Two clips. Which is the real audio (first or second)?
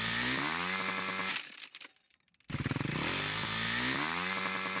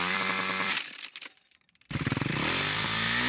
first